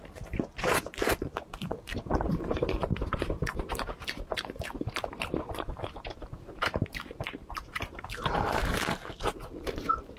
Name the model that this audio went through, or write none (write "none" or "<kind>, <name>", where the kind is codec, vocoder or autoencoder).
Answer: vocoder, BigVGAN v2